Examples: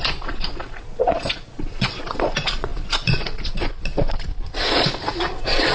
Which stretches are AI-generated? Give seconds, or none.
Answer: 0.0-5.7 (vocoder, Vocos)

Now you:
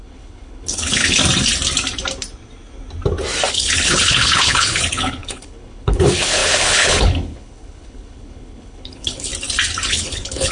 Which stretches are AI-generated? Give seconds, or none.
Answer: 0.0-1.2 (codec, HILCodec); 3.5-9.3; 9.9-10.5

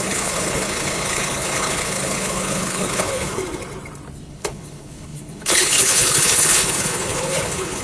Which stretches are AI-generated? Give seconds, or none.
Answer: 0.0-3.4 (codec, HILCodec); 4.3-7.8

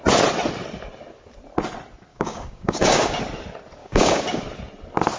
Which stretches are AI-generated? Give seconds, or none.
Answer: 2.1-3.2 (codec, DAC); 3.8-4.4

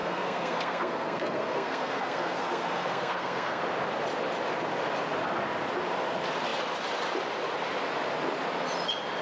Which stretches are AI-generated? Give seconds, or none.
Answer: 0.0-3.6 (codec, SNAC)